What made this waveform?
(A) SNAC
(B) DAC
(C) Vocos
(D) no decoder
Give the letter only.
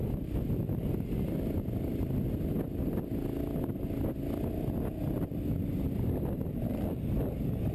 D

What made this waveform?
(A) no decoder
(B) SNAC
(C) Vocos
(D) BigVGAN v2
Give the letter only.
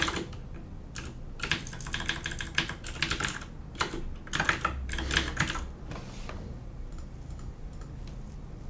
A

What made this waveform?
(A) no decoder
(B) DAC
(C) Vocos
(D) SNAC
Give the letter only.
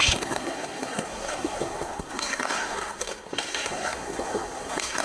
D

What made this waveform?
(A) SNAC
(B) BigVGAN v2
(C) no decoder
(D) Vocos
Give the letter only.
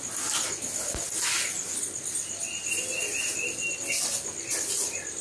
C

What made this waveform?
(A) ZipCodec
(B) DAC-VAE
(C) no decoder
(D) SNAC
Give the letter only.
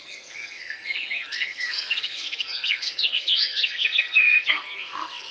D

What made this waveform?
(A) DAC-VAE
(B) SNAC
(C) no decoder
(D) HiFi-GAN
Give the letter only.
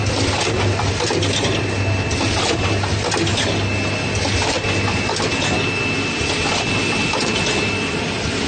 C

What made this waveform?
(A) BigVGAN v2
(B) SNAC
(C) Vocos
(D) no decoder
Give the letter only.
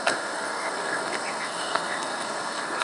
B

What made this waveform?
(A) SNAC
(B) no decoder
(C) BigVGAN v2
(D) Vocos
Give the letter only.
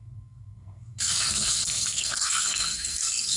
A